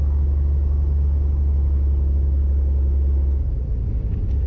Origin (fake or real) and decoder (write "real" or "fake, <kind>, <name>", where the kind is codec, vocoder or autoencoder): real